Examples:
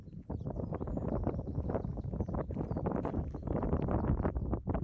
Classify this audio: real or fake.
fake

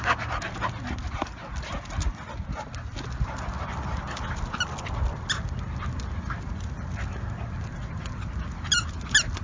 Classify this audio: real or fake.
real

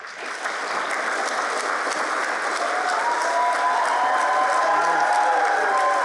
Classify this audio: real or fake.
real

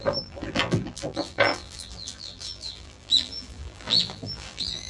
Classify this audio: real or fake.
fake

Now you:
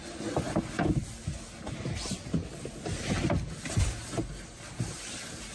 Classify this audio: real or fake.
real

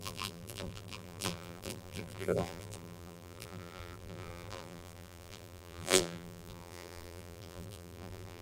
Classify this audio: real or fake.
fake